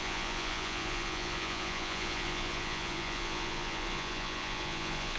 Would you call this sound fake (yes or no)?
yes